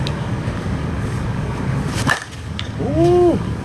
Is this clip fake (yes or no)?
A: yes